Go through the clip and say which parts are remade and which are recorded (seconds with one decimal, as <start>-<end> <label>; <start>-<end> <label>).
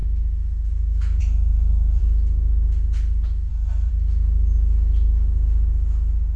0.0-1.2 recorded; 1.2-2.0 remade; 2.0-3.5 recorded; 3.5-3.9 remade; 3.9-6.4 recorded